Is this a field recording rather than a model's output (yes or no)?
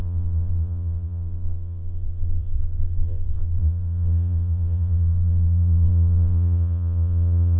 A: no